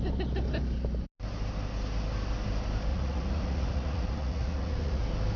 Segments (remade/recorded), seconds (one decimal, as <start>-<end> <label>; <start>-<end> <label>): 0.0-2.9 recorded; 2.9-5.0 remade; 5.0-5.4 recorded

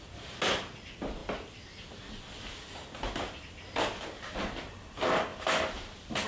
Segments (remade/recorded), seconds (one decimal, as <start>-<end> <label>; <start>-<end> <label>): 0.0-6.3 recorded

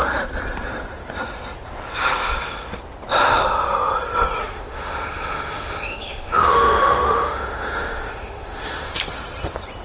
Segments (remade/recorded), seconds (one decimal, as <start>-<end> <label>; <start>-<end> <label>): 0.0-4.4 recorded; 4.4-8.9 remade; 8.9-9.8 recorded

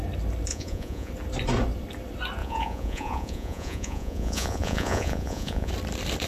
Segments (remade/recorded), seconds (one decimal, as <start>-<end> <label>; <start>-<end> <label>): 0.0-0.5 recorded; 0.5-1.1 remade; 1.1-2.4 recorded; 2.4-5.7 remade; 5.7-6.3 recorded

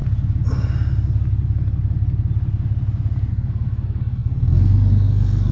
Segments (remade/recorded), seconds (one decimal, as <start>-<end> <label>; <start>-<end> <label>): 0.0-3.3 recorded; 3.3-5.5 remade

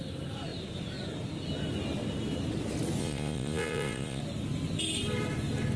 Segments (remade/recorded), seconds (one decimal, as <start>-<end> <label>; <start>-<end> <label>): 0.0-3.0 recorded; 3.0-4.2 remade; 4.2-5.8 recorded

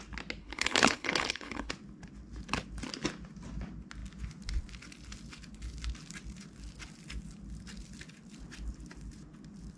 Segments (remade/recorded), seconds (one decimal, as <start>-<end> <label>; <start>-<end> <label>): 0.0-0.4 recorded; 0.4-1.7 remade; 1.7-9.8 recorded